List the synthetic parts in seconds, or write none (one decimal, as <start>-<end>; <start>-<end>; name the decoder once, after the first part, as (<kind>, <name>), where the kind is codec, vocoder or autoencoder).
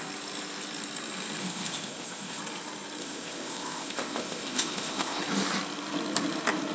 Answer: 1.4-2.4 (codec, ZipCodec); 3.0-5.2